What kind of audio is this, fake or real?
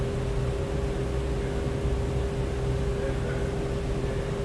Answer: real